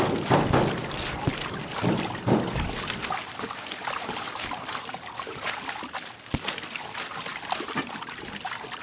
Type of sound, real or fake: real